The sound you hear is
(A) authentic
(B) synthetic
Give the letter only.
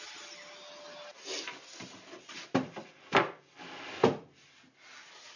A